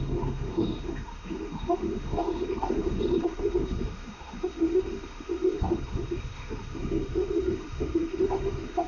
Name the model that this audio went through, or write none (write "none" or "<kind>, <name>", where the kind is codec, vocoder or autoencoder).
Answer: autoencoder, DAC-VAE